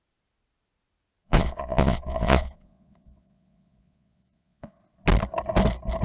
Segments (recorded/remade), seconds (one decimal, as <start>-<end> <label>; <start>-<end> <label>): 0.0-1.2 recorded; 1.2-4.8 remade; 4.8-6.0 recorded